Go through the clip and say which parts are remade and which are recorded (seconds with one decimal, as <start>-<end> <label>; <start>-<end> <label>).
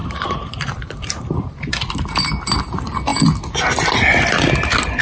0.0-1.7 remade; 1.7-5.0 recorded